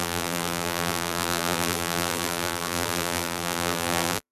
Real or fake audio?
fake